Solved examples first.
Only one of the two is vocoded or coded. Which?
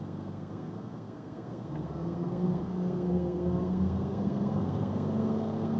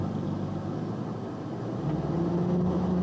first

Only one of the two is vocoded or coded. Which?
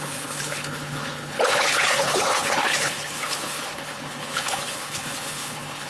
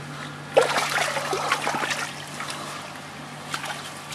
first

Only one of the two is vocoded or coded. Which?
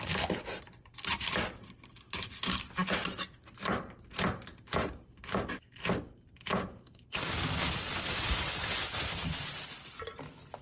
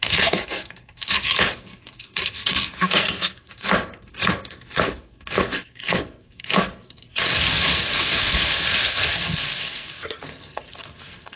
second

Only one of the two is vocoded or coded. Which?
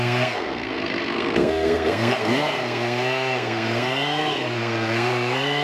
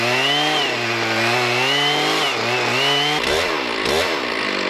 first